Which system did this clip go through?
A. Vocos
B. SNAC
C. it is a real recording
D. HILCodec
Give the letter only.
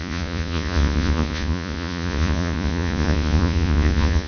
A